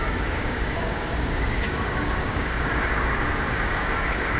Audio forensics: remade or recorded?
remade